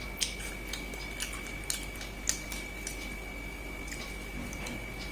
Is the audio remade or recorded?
recorded